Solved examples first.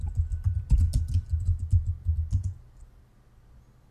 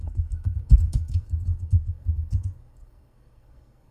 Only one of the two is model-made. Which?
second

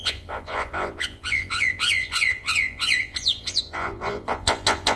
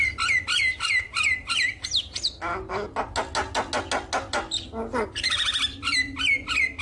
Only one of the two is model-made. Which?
first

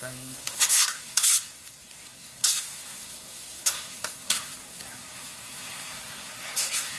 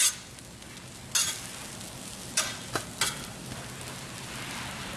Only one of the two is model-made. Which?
first